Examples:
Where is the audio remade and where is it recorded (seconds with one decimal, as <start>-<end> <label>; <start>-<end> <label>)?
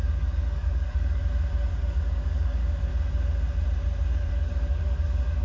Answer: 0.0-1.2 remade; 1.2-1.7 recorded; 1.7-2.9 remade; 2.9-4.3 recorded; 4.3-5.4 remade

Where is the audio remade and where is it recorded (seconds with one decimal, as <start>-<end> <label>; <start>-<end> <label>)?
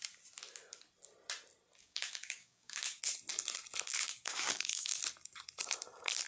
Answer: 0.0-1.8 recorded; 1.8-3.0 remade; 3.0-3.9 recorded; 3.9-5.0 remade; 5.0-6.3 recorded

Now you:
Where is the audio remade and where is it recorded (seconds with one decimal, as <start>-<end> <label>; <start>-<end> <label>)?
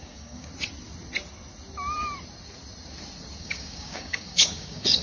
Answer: 0.0-0.5 remade; 0.5-3.4 recorded; 3.4-5.0 remade